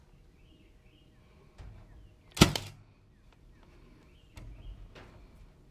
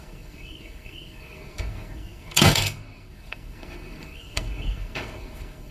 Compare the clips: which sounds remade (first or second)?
second